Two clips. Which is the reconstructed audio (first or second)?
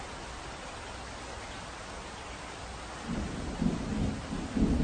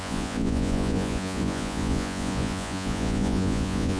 second